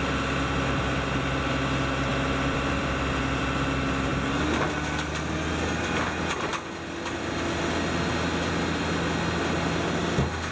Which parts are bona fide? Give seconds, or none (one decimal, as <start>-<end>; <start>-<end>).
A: 0.0-10.5